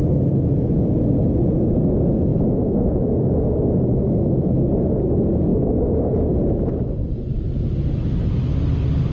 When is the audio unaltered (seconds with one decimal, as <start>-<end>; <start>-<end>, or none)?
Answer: 1.1-2.3; 4.5-5.5; 6.1-9.1